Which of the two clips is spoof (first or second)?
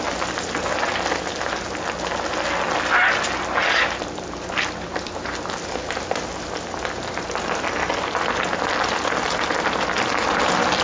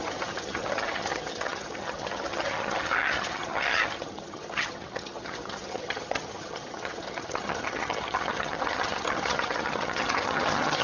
second